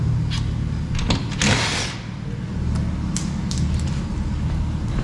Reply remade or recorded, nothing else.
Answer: recorded